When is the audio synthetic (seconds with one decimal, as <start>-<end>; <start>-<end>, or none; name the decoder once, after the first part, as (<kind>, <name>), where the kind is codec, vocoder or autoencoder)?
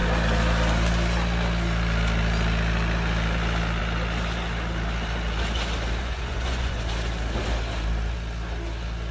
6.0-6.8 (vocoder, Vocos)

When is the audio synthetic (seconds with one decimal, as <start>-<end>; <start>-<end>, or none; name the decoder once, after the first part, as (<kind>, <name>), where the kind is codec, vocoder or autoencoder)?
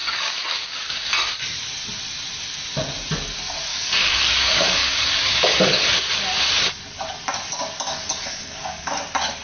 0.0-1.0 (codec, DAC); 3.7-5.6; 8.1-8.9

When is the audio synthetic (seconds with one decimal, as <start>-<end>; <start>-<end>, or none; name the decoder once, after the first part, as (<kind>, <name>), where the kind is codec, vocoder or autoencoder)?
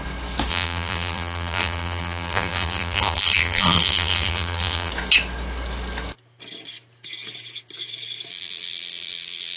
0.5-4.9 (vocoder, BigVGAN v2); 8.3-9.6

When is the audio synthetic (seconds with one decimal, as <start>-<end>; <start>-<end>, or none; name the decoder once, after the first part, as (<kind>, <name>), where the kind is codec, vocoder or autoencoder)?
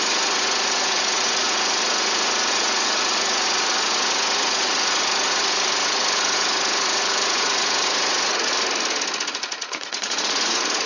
0.0-8.5 (vocoder, Vocos); 9.3-10.9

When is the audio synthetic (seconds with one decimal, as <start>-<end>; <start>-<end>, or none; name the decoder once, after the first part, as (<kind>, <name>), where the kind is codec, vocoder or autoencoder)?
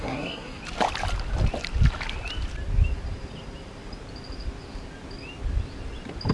0.0-0.6 (codec, SNAC)